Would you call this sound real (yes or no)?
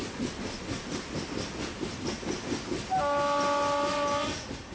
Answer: yes